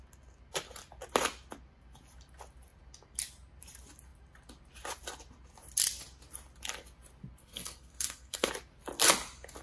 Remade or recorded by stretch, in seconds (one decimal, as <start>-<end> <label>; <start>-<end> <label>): 0.0-7.4 recorded; 7.4-8.5 remade; 8.5-9.6 recorded